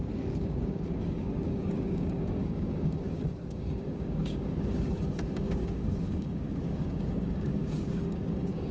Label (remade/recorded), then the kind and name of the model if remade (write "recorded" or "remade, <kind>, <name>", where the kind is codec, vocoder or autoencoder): remade, codec, DAC